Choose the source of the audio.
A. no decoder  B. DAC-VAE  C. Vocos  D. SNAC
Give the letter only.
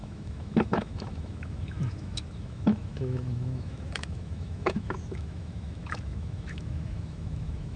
B